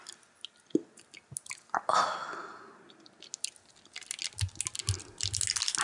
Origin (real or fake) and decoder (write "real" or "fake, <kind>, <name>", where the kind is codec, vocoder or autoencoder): real